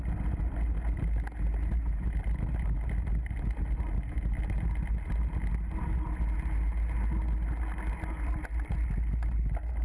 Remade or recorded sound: recorded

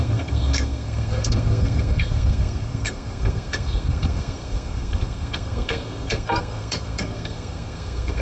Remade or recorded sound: remade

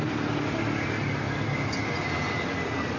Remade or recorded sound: recorded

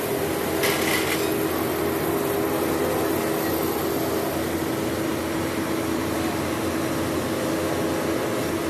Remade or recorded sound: recorded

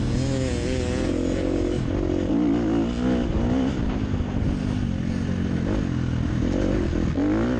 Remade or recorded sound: recorded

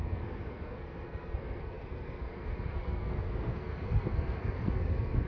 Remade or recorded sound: remade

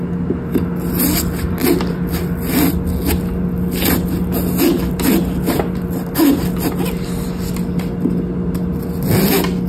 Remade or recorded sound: recorded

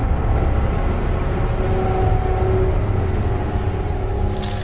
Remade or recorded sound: recorded